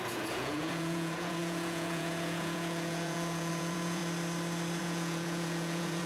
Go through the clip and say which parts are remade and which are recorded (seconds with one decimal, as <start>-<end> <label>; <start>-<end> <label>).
0.0-4.0 remade; 4.0-4.8 recorded; 4.8-6.1 remade

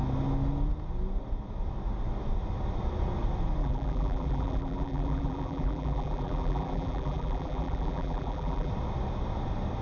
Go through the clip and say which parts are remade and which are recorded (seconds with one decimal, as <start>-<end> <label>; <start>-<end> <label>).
0.0-3.6 recorded; 3.6-8.7 remade; 8.7-9.8 recorded

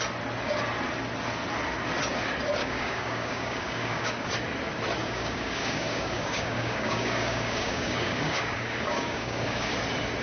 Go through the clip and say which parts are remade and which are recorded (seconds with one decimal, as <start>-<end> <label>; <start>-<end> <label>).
0.0-2.6 recorded; 2.6-4.3 remade; 4.3-5.0 recorded; 5.0-9.7 remade; 9.7-10.2 recorded

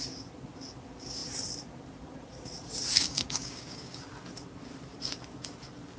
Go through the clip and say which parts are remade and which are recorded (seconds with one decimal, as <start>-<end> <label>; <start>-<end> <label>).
0.0-2.9 recorded; 2.9-4.0 remade; 4.0-6.0 recorded

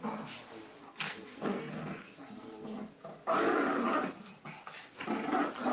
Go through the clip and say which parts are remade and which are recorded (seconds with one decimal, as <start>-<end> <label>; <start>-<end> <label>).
0.0-0.8 recorded; 0.8-2.9 remade; 2.9-5.7 recorded